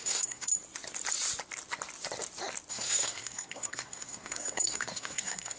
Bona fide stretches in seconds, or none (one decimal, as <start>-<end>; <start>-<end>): 0.5-2.7